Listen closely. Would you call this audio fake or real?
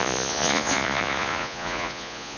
fake